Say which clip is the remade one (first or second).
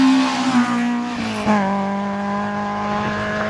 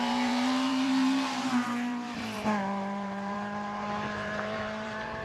second